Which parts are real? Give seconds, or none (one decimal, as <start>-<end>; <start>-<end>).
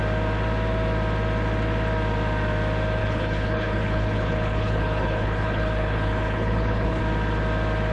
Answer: 0.0-3.0; 7.0-7.9